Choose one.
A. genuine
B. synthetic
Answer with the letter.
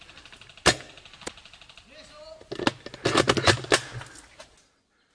A